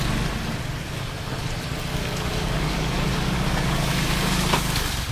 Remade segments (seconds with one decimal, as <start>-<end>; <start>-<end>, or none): 1.9-5.1